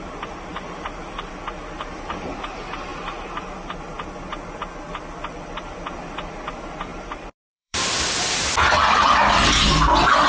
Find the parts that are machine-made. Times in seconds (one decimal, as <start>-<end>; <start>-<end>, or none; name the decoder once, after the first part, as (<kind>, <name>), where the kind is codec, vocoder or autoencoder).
0.5-1.3 (vocoder, BigVGAN v2); 6.9-8.4